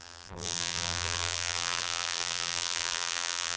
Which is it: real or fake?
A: fake